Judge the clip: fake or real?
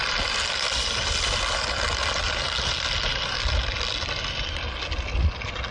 real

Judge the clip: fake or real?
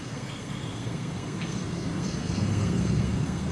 fake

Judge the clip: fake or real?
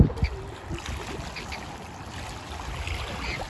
real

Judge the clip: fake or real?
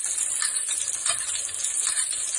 real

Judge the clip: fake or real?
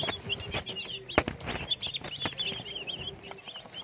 real